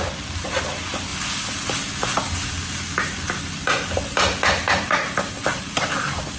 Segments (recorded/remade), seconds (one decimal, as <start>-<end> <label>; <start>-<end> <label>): 0.0-6.4 recorded